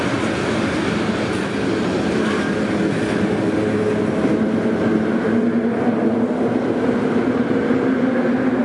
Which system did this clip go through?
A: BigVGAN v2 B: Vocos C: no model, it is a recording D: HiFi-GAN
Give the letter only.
C